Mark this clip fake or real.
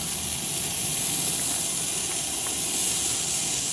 real